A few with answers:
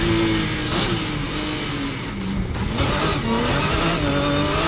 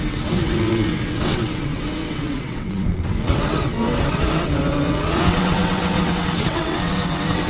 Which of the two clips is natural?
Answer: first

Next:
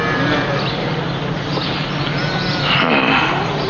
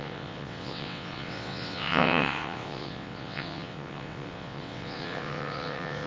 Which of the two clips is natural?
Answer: first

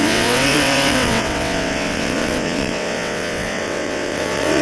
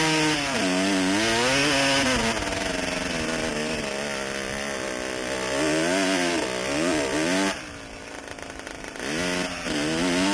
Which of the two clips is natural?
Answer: second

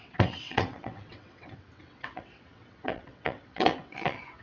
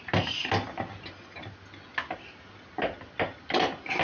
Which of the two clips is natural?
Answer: second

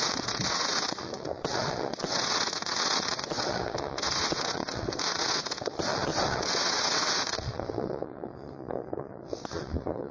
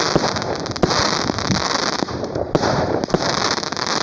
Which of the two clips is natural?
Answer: second